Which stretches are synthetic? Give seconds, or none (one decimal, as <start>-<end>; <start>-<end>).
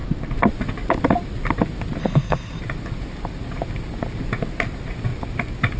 2.0-2.6